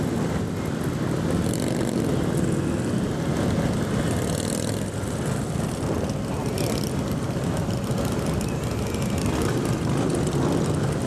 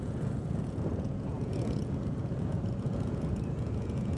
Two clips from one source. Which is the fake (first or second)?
second